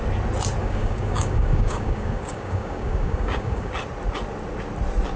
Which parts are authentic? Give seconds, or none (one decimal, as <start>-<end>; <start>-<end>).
0.0-0.6; 3.7-5.2